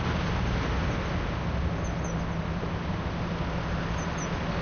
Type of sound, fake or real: real